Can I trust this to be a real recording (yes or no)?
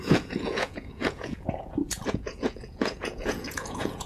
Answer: no